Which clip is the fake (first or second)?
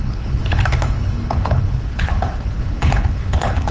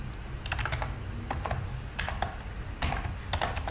first